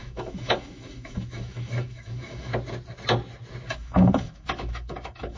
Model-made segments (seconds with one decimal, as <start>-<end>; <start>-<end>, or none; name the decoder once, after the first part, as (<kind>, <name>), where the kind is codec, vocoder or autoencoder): 0.0-2.5 (autoencoder, DAC-VAE); 3.7-5.4